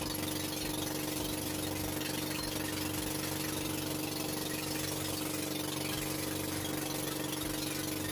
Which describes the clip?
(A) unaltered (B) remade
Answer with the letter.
A